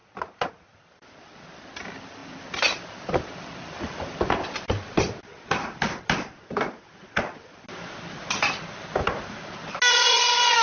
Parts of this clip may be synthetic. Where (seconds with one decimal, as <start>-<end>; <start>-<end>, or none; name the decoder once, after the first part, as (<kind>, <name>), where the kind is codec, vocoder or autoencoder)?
none